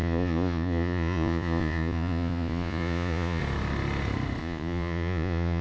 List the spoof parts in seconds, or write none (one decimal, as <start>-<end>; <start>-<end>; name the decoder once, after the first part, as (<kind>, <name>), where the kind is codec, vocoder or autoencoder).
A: 0.0-3.4 (vocoder, Vocos); 4.4-5.6